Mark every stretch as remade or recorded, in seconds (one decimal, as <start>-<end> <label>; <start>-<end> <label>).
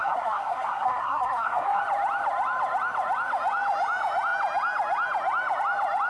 0.0-1.8 remade; 1.8-6.1 recorded